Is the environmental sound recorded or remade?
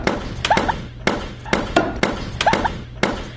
recorded